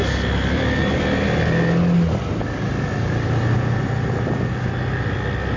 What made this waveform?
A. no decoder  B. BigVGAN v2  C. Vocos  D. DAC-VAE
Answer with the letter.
A